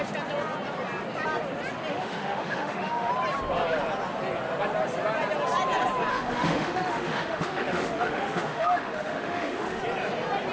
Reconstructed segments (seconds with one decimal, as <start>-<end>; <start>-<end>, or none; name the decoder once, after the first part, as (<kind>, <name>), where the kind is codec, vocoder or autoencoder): 1.9-3.1 (autoencoder, DAC-VAE); 6.1-9.8